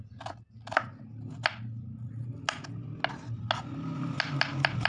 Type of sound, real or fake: real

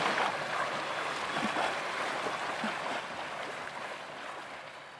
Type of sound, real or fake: real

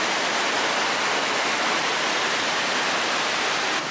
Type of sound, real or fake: real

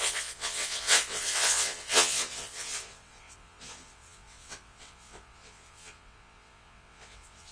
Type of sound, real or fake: fake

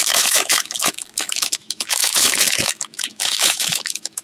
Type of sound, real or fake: fake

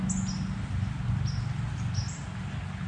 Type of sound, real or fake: real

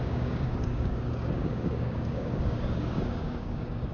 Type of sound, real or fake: fake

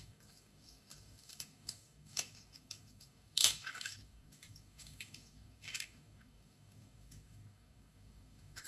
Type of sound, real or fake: fake